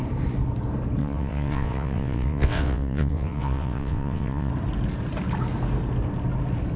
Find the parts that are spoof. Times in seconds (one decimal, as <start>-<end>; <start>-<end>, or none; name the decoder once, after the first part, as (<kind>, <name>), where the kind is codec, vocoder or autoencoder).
1.0-4.5 (vocoder, WaveNeXt)